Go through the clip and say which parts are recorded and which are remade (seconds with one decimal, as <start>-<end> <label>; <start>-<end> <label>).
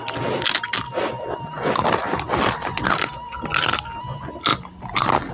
0.0-5.3 recorded